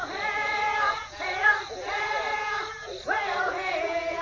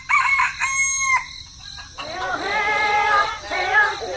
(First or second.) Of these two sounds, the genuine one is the second